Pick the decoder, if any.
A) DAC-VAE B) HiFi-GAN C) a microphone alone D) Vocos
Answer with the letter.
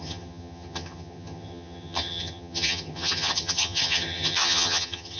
B